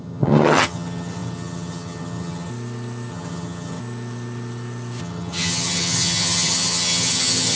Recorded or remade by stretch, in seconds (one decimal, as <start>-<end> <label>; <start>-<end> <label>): 0.0-2.5 remade; 2.5-3.1 recorded; 3.1-3.8 remade; 3.8-5.0 recorded; 5.0-7.6 remade